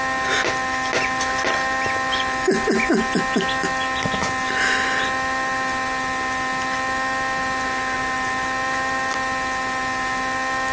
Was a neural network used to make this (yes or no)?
no